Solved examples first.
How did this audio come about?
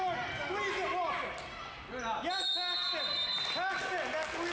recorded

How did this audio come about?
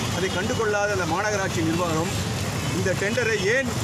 recorded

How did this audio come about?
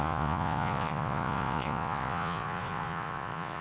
remade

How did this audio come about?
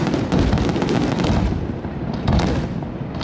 recorded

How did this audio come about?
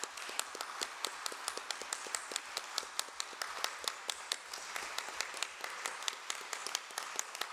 recorded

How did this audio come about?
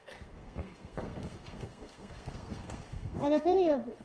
remade